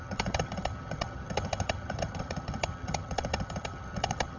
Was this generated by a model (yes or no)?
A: yes